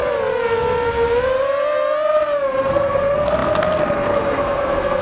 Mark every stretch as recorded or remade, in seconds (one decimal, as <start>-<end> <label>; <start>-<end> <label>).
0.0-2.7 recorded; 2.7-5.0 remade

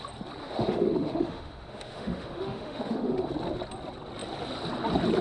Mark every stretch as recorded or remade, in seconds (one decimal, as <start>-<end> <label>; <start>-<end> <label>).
0.0-0.4 recorded; 0.4-3.3 remade; 3.3-5.2 recorded

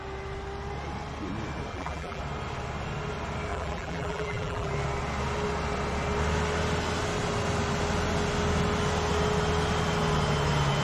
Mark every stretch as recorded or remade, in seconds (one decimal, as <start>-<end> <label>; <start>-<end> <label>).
0.0-1.7 recorded; 1.7-2.2 remade; 2.2-3.5 recorded; 3.5-4.7 remade; 4.7-10.8 recorded

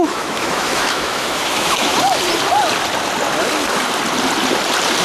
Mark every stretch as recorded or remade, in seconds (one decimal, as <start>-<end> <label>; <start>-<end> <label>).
0.0-1.9 remade; 1.9-5.0 recorded

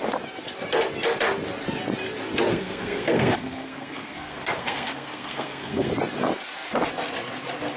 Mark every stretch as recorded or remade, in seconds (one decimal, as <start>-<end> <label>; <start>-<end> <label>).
0.0-2.5 recorded; 2.5-5.9 remade; 5.9-7.8 recorded